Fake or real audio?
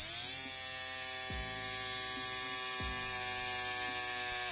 real